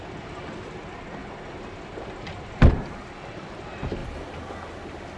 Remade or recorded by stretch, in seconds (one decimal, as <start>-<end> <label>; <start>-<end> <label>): 0.0-5.2 recorded

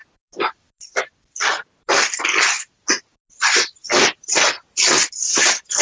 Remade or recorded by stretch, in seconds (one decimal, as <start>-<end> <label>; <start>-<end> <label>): 0.0-5.8 recorded